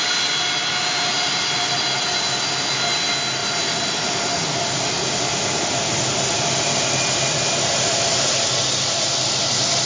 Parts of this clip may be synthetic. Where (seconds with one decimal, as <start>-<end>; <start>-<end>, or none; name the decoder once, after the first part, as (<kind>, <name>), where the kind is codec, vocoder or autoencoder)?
3.4-7.0 (vocoder, BigVGAN v2)